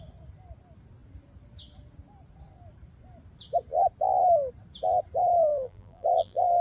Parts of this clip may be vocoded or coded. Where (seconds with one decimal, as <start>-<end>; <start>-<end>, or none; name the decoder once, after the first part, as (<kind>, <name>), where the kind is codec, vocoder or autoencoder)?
5.5-6.6 (vocoder, BigVGAN v2)